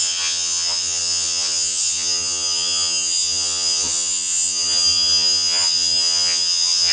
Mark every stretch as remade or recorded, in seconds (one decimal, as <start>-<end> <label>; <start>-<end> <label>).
0.0-6.9 remade